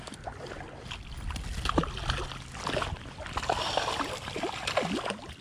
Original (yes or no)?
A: yes